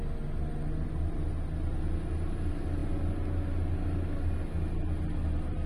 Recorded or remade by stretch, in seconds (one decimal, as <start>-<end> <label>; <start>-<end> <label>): 0.0-5.7 recorded